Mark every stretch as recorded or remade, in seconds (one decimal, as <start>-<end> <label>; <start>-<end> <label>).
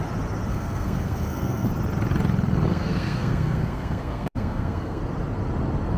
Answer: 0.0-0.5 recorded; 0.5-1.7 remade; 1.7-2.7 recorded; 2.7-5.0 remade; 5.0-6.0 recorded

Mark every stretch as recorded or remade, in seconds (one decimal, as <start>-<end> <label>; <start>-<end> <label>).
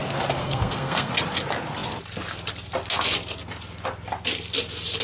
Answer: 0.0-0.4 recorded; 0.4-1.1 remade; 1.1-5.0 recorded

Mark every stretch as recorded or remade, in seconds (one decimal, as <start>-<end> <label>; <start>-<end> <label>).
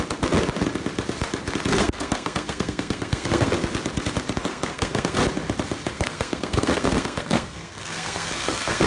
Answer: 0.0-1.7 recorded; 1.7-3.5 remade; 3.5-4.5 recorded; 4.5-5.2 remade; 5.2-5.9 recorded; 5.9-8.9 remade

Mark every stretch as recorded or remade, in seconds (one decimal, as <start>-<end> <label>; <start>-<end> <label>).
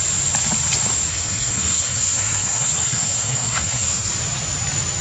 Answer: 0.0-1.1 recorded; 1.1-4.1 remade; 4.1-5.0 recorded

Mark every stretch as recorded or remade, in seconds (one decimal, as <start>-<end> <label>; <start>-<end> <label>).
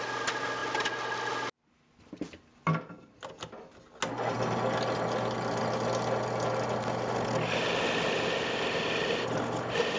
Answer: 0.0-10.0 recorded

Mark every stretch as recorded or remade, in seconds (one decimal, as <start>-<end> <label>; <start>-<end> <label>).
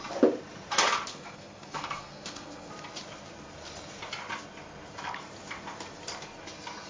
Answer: 0.0-1.1 recorded; 1.1-2.7 remade; 2.7-6.9 recorded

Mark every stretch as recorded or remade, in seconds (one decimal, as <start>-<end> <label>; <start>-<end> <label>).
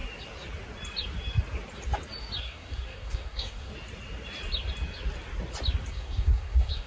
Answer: 0.0-2.4 recorded; 2.4-3.7 remade; 3.7-5.9 recorded; 5.9-6.9 remade